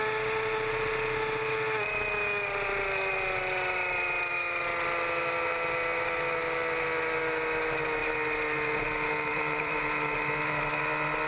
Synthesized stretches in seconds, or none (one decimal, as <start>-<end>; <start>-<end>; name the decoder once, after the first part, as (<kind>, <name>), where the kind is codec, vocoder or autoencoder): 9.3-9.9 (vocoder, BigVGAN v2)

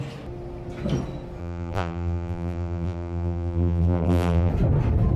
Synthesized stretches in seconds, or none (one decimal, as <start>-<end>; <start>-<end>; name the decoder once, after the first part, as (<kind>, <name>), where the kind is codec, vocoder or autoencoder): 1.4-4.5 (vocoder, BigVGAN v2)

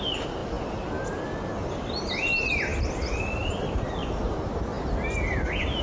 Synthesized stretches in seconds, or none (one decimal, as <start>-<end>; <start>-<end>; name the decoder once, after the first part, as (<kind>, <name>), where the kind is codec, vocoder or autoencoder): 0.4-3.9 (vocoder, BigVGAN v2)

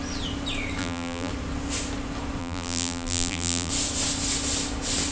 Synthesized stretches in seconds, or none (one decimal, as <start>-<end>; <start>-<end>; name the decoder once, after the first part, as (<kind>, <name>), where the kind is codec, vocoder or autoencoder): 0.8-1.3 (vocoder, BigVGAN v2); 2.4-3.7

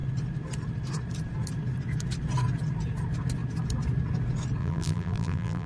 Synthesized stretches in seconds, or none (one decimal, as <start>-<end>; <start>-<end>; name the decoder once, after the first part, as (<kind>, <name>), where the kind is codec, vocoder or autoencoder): 4.6-5.7 (vocoder, BigVGAN v2)

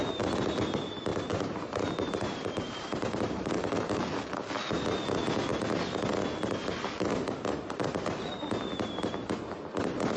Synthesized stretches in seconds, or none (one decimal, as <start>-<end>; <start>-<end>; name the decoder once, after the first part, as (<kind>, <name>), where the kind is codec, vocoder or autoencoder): 1.1-4.1 (vocoder, BigVGAN v2)

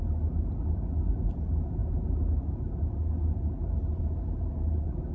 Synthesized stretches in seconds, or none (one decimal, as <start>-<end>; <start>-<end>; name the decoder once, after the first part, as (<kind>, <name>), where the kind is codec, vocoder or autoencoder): none

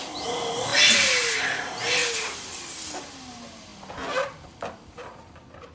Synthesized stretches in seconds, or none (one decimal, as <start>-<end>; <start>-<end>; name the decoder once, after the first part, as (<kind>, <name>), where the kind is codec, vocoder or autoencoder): 0.0-0.7 (vocoder, BigVGAN v2); 1.3-2.0; 3.3-3.7; 4.7-5.7